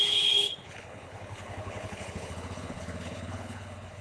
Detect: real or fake fake